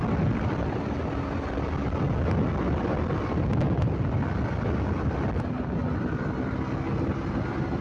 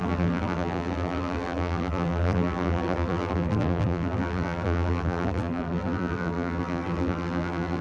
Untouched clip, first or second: first